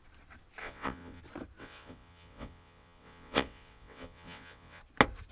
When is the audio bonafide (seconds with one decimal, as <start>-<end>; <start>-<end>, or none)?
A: 0.0-0.6; 1.2-1.6; 4.8-5.3